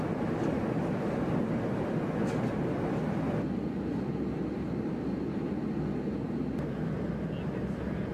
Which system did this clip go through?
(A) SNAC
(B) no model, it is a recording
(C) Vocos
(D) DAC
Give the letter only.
B